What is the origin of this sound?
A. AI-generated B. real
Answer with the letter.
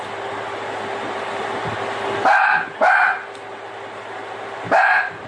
B